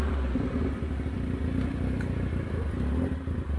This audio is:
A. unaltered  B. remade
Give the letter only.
B